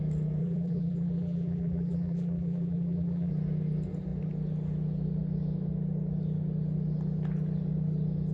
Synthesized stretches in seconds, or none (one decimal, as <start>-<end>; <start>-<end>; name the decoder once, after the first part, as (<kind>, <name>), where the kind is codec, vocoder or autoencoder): 0.4-3.3 (vocoder, BigVGAN v2)